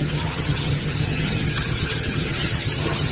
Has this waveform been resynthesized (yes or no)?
yes